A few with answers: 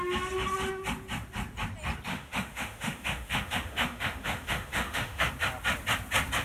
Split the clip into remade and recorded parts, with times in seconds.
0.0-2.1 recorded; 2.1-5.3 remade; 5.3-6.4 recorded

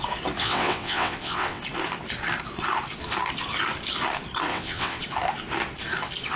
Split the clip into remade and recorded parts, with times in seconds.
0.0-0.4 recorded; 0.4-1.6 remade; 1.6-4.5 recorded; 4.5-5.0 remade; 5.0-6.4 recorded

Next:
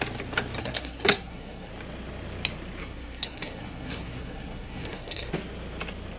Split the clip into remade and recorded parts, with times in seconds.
0.0-0.6 recorded; 0.6-1.7 remade; 1.7-2.8 recorded; 2.8-5.3 remade; 5.3-6.2 recorded

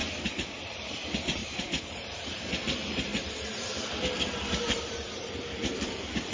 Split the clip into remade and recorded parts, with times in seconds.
0.0-0.6 recorded; 0.6-1.4 remade; 1.4-1.9 recorded; 1.9-6.3 remade

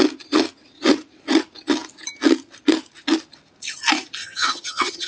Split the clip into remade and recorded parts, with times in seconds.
0.0-4.2 recorded; 4.2-5.1 remade

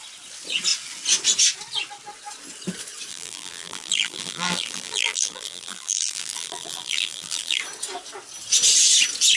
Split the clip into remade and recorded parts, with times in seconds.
0.0-3.1 recorded; 3.1-7.6 remade; 7.6-9.4 recorded

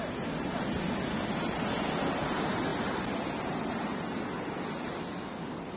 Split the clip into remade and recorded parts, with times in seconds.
0.0-5.8 recorded